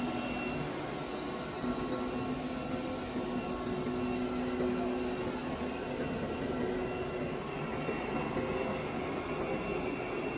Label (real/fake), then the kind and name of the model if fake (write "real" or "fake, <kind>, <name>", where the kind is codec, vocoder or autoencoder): real